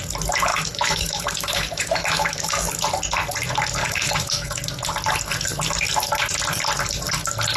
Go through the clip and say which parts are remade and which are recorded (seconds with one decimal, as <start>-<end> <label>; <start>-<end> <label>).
0.0-0.5 recorded; 0.5-2.7 remade; 2.7-3.8 recorded; 3.8-4.6 remade; 4.6-7.6 recorded